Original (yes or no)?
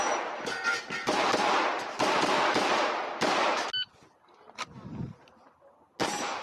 yes